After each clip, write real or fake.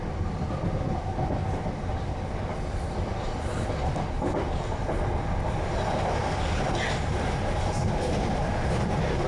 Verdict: real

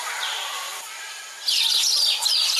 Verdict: fake